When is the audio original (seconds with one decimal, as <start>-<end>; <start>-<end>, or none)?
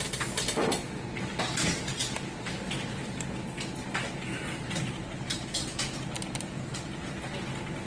0.0-7.9